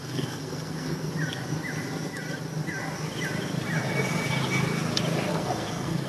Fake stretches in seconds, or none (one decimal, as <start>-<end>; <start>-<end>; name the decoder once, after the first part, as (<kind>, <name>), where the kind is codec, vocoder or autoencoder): 0.0-1.1 (codec, SNAC); 5.3-6.1